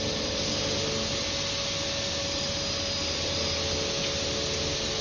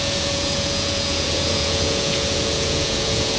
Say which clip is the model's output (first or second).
second